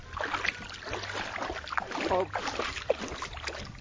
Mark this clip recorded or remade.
recorded